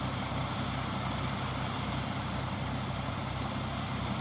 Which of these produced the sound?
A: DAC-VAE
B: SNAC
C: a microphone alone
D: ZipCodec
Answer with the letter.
C